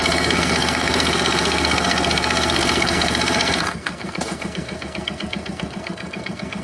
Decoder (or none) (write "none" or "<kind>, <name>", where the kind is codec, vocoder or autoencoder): codec, SNAC